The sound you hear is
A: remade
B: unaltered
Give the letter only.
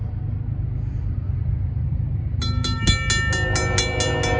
B